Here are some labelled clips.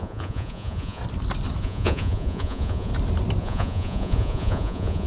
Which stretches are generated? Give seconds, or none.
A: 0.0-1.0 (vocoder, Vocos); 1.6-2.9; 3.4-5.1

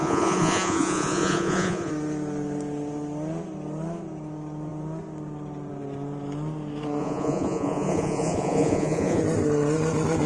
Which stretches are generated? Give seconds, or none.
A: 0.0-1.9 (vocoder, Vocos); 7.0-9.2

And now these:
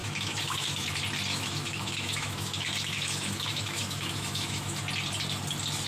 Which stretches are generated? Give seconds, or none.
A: 0.0-0.9 (autoencoder, DAC-VAE); 1.3-4.8

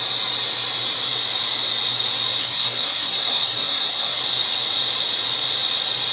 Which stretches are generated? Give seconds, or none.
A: 2.4-4.2 (codec, SNAC)

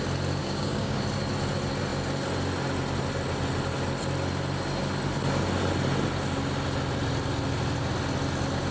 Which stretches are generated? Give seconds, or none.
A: 0.4-1.0 (codec, DAC)

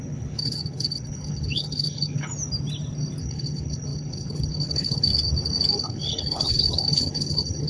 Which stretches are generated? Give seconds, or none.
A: 0.0-2.3 (codec, HILCodec); 3.2-5.1; 5.8-7.7